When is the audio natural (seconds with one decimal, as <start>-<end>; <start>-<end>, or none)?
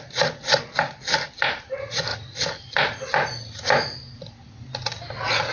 0.0-5.5